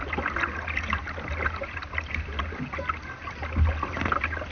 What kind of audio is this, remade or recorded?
recorded